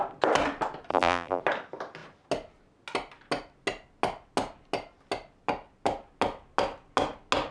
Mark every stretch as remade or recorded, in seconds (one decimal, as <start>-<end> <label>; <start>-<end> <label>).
0.0-0.9 recorded; 0.9-1.4 remade; 1.4-7.5 recorded